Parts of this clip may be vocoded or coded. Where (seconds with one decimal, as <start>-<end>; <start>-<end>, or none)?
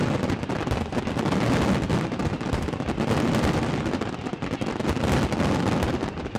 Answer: none